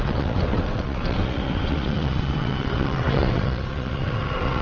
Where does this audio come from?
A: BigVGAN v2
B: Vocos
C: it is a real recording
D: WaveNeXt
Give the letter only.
D